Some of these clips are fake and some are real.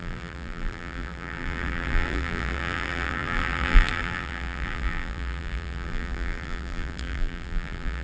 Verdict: fake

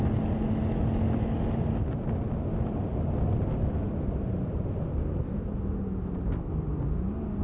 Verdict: real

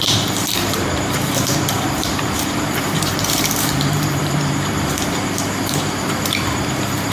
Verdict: fake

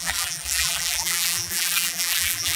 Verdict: fake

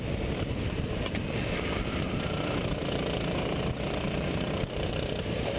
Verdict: fake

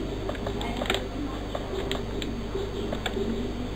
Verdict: real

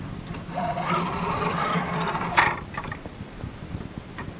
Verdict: fake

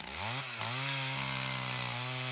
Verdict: real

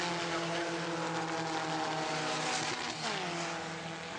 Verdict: real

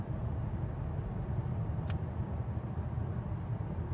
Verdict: real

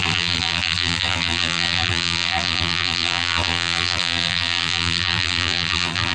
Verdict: fake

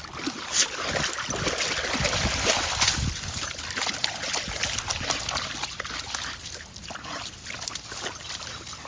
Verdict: real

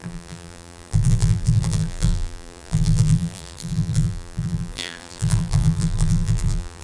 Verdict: fake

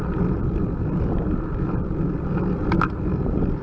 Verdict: real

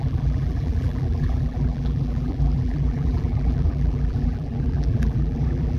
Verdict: fake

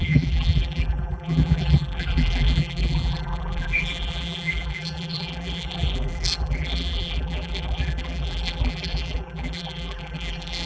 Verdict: fake